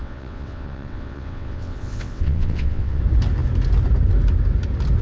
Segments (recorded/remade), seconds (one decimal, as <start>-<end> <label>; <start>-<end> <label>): 0.0-3.0 remade; 3.0-5.0 recorded